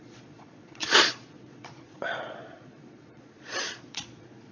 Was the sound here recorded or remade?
remade